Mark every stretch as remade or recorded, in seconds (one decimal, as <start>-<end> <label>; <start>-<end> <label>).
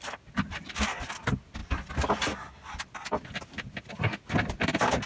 0.0-5.1 recorded